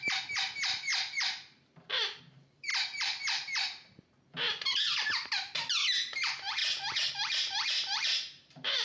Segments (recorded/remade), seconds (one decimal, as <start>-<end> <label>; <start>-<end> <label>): 0.0-6.6 remade; 6.6-7.1 recorded; 7.1-8.8 remade